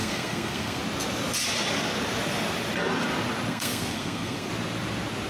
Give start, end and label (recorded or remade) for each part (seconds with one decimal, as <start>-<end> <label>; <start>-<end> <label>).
0.0-0.8 remade; 0.8-3.5 recorded; 3.5-4.5 remade; 4.5-5.3 recorded